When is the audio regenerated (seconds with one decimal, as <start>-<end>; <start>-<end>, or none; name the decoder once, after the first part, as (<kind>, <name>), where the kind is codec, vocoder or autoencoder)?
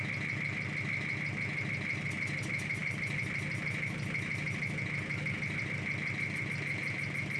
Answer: none